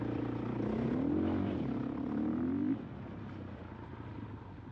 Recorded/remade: recorded